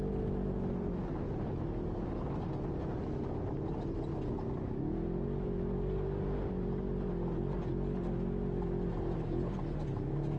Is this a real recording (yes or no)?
yes